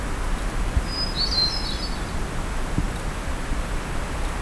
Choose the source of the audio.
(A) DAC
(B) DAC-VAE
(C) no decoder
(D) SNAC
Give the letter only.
C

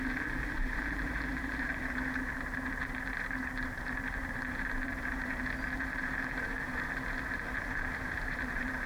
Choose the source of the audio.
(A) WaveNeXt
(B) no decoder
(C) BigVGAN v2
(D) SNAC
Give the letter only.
C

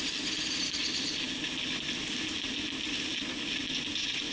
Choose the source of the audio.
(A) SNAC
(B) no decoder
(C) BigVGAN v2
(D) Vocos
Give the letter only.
B